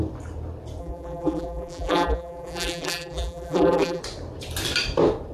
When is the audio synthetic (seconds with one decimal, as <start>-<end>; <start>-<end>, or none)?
0.8-4.0